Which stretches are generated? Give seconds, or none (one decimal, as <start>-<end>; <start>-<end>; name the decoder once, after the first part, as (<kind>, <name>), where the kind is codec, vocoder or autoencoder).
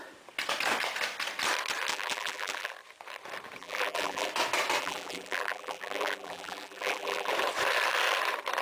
1.9-2.7 (vocoder, BigVGAN v2); 3.6-4.3; 4.8-7.3